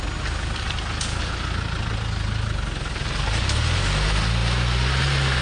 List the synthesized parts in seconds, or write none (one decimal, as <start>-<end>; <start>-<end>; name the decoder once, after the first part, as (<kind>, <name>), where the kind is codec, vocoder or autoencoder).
none